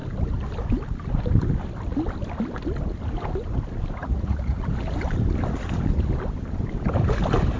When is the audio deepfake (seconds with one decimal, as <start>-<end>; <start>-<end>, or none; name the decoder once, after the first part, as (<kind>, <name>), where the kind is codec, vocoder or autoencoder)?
4.0-4.6 (vocoder, Vocos)